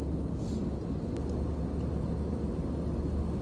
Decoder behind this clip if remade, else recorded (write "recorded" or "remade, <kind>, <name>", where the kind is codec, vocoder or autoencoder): recorded